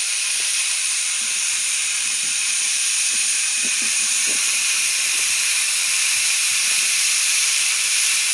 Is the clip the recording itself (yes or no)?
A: no